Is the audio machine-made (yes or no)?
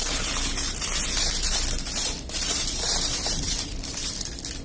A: yes